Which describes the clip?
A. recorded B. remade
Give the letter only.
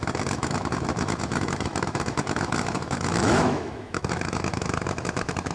B